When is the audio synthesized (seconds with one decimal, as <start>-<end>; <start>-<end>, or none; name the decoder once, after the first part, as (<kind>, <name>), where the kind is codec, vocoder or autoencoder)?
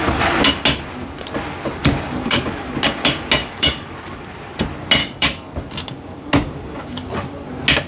1.8-2.5 (codec, DAC); 3.4-4.2; 5.0-5.6